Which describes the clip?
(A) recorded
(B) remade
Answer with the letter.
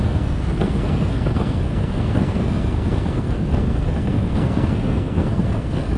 B